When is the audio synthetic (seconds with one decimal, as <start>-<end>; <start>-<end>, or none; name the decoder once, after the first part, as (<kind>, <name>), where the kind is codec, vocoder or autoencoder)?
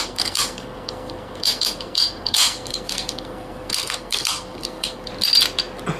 0.0-5.1 (codec, SNAC)